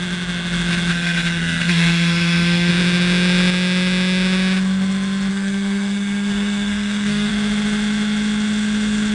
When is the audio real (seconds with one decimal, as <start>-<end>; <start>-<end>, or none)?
0.0-0.9; 2.7-5.3; 7.3-9.1